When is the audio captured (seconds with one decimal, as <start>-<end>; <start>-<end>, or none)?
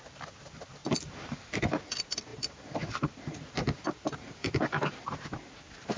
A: 0.0-0.8; 1.6-2.3; 5.3-6.0